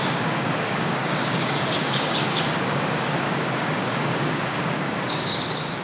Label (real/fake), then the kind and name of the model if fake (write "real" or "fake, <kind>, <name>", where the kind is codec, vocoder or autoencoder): fake, codec, DAC